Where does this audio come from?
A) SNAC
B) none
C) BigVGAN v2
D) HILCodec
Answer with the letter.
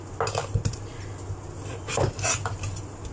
B